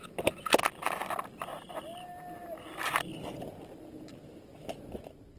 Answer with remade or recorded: recorded